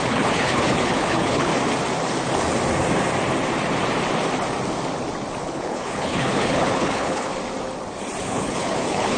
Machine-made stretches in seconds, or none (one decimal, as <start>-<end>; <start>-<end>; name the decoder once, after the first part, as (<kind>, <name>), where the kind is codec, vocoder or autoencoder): 0.0-1.5 (codec, HILCodec); 5.4-7.3; 8.2-9.2